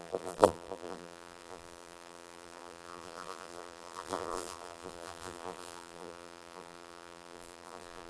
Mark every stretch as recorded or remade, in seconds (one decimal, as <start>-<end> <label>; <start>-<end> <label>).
0.0-8.1 remade

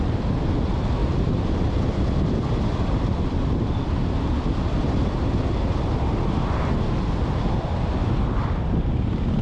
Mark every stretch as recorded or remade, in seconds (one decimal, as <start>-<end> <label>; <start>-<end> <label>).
0.0-1.0 recorded; 1.0-4.4 remade; 4.4-9.4 recorded

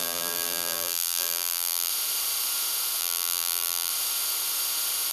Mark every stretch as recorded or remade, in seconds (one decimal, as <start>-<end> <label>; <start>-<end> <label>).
0.0-1.9 remade; 1.9-3.0 recorded; 3.0-3.9 remade; 3.9-5.1 recorded

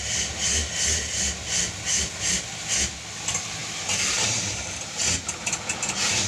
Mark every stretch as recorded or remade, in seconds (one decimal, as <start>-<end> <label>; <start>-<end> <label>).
0.0-3.6 recorded; 3.6-5.0 remade; 5.0-6.3 recorded